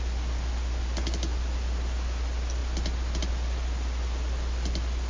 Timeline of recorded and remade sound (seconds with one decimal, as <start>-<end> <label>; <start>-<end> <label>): 0.0-5.1 recorded